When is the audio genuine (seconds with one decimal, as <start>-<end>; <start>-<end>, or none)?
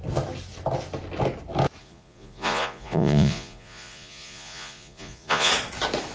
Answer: 0.0-1.8; 5.5-6.1